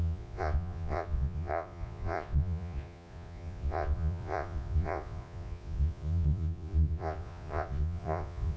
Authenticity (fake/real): fake